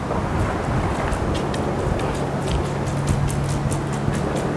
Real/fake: real